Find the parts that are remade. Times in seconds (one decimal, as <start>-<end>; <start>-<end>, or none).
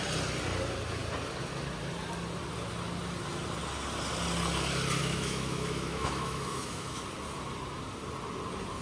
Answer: 5.0-7.0